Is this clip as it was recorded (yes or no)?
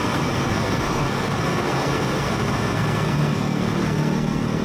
no